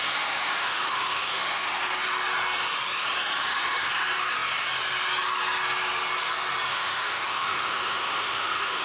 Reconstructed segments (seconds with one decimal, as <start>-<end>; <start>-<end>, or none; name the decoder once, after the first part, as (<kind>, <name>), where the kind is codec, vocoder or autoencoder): 0.6-1.7 (autoencoder, DAC-VAE); 6.7-8.8